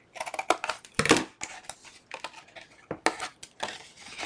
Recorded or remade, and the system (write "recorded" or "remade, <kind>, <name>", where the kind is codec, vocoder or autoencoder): recorded